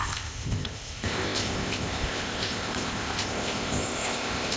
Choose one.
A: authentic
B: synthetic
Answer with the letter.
B